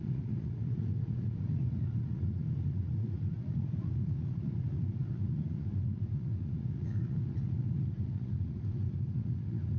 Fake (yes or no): yes